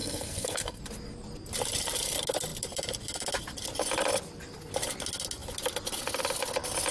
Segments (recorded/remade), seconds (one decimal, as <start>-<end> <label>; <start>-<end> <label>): 0.0-0.8 remade; 0.8-6.9 recorded